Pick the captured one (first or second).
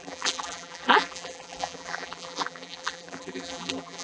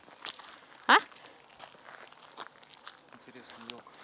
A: second